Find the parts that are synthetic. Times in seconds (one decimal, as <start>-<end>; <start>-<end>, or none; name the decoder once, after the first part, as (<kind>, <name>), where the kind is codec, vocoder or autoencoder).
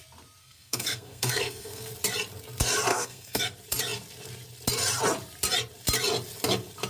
0.4-1.9 (codec, SNAC); 2.9-3.4